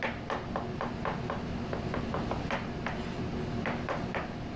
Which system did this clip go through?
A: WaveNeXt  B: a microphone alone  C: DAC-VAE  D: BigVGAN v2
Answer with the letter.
B